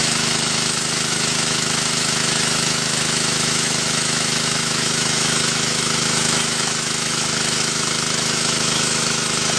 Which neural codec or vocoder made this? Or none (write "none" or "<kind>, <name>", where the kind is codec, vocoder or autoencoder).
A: autoencoder, DAC-VAE